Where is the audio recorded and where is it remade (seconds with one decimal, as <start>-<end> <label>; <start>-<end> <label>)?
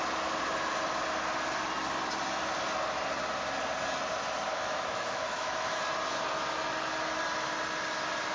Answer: 0.0-4.5 recorded; 4.5-5.8 remade; 5.8-8.3 recorded